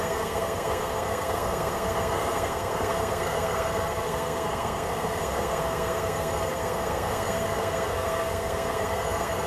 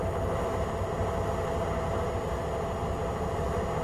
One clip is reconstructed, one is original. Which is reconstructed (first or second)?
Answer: first